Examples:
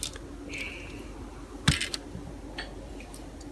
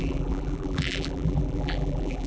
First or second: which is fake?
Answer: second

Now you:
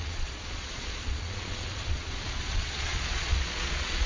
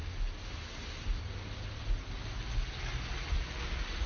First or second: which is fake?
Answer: first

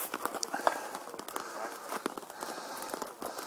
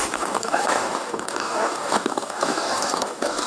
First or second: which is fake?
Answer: second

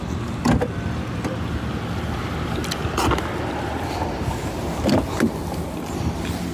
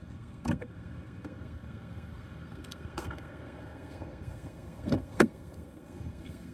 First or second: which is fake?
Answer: second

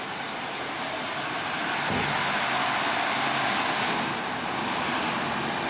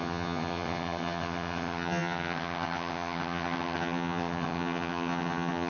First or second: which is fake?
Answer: second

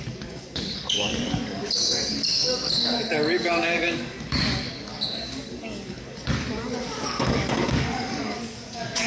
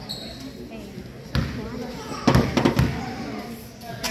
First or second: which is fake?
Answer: first